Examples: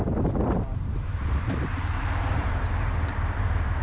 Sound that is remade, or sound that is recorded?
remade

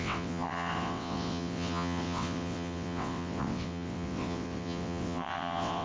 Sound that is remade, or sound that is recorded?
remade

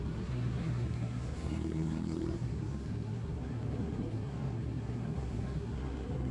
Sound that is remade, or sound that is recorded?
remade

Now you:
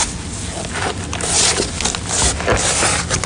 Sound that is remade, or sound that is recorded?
recorded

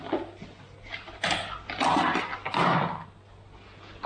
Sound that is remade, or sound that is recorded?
recorded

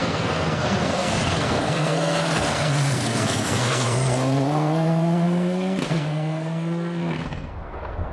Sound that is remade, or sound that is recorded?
remade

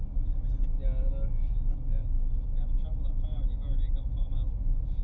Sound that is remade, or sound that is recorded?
recorded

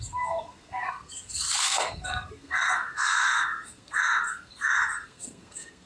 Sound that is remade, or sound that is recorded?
remade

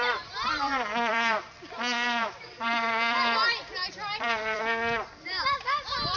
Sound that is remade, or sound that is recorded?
remade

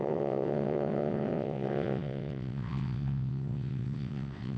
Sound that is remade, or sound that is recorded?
remade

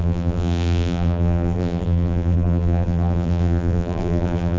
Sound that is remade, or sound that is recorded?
remade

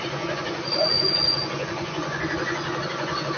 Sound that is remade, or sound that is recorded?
remade